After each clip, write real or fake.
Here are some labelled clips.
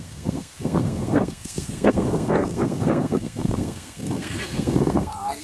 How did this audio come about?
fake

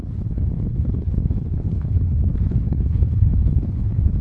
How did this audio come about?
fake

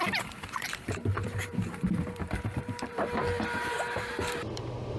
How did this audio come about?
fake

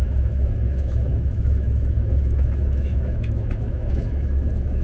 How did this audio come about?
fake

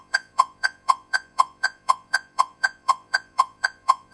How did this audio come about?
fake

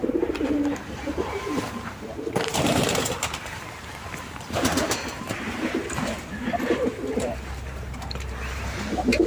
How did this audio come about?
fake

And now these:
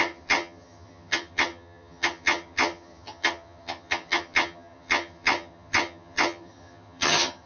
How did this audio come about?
fake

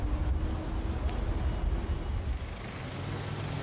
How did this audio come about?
real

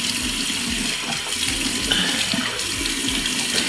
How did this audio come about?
real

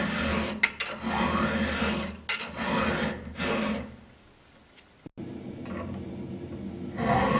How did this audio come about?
real